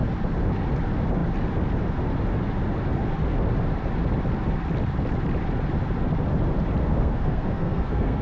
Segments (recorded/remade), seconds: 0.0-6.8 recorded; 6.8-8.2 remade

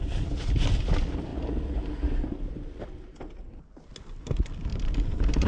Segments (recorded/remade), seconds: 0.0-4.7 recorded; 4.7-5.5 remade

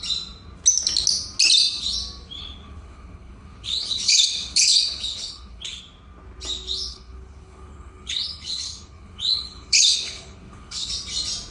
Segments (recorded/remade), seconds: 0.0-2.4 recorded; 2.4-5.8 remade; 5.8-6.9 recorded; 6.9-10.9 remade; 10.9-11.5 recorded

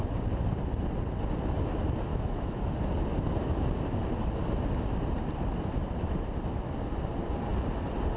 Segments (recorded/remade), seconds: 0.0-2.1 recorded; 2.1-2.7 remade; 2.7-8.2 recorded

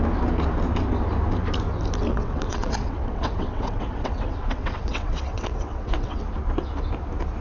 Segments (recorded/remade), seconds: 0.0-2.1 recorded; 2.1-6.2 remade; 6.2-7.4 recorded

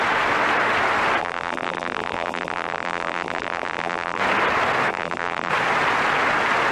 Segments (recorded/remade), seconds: 0.0-1.2 recorded; 1.2-4.2 remade; 4.2-4.9 recorded; 4.9-5.5 remade; 5.5-6.7 recorded